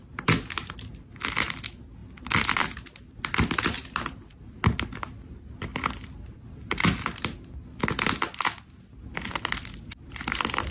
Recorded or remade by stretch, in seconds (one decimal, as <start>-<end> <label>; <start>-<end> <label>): 0.0-10.7 recorded